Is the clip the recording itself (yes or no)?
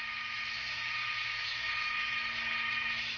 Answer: no